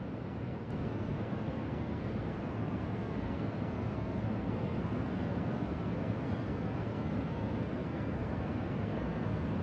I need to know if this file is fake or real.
fake